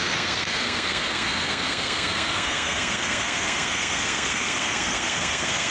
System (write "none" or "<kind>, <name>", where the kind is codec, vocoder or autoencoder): codec, SNAC